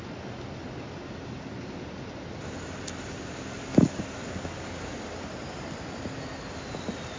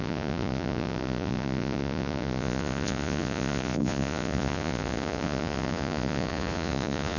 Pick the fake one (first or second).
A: second